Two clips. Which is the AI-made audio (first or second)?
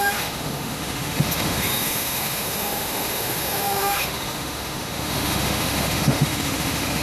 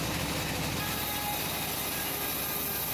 first